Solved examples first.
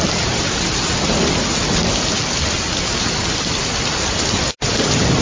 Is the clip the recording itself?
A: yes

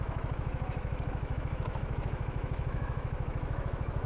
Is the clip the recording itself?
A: no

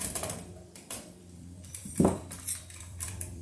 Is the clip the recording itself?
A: no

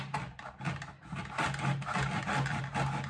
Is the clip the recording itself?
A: yes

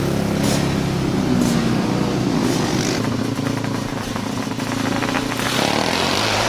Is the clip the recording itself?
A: yes